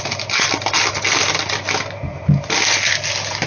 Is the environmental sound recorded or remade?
recorded